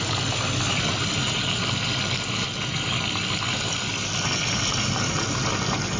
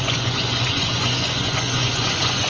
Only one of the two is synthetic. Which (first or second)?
second